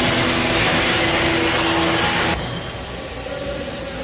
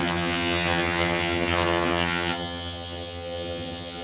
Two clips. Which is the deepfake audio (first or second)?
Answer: second